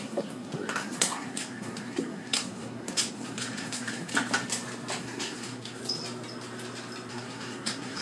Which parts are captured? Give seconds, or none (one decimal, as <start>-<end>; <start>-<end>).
4.1-5.0; 5.8-7.1